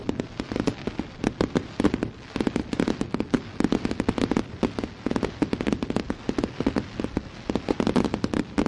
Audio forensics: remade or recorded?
recorded